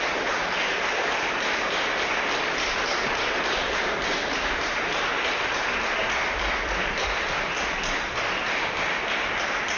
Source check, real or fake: real